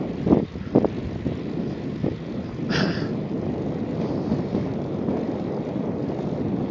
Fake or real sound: real